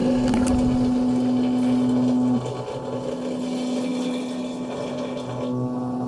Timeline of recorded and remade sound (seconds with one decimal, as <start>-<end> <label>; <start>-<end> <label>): 0.0-6.1 recorded